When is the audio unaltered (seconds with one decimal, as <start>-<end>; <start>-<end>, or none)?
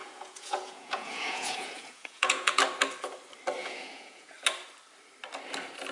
2.6-3.6; 4.3-5.9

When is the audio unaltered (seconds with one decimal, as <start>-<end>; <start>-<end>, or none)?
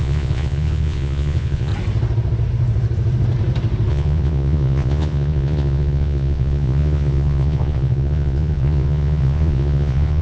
1.7-3.9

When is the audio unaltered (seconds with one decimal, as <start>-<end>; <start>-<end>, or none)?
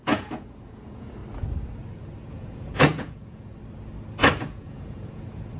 1.2-2.3; 3.5-4.4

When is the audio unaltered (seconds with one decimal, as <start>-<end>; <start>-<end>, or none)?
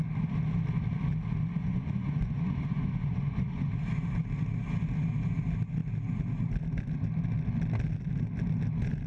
0.0-1.6; 3.7-9.1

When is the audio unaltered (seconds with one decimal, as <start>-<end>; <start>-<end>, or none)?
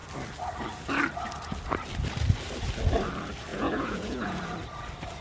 0.0-3.5; 4.4-5.2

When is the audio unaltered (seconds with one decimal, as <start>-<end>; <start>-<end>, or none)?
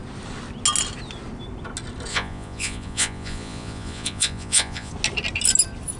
0.0-2.1; 4.9-6.0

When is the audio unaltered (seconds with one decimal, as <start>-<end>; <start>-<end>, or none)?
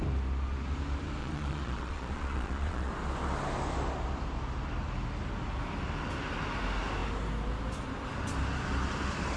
0.0-1.2; 2.9-9.4